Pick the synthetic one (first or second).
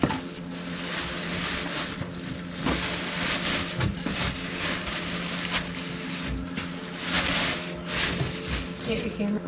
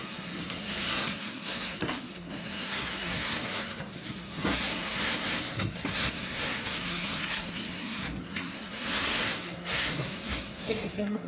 second